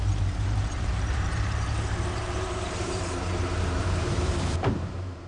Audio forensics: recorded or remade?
remade